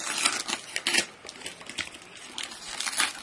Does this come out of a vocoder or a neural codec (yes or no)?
no